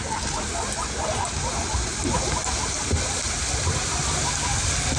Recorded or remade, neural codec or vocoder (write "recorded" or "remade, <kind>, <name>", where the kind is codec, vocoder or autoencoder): recorded